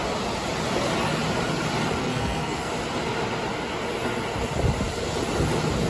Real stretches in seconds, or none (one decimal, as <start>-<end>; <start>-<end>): 0.0-2.0; 2.7-5.9